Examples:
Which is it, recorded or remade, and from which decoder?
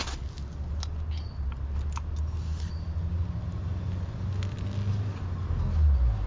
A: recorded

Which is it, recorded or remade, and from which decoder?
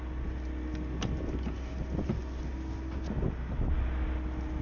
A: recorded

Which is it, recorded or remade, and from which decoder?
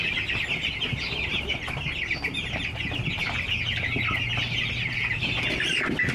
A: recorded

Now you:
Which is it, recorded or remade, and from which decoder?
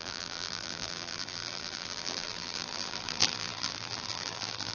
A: remade, vocoder, BigVGAN v2